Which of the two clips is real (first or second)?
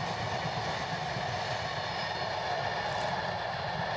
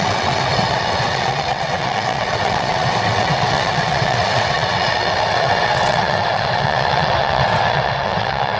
first